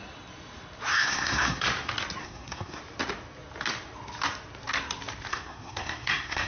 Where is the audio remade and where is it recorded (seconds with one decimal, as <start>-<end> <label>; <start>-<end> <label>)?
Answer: 0.0-0.9 recorded; 0.9-1.6 remade; 1.6-2.2 recorded; 2.2-2.8 remade; 2.8-5.3 recorded; 5.3-6.5 remade